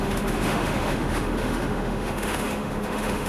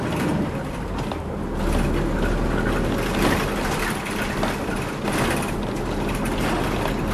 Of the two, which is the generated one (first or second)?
first